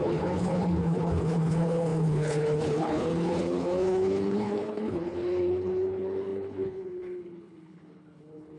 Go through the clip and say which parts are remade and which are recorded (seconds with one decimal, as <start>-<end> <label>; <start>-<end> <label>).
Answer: 0.0-8.6 remade